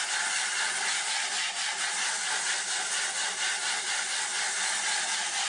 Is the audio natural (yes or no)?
no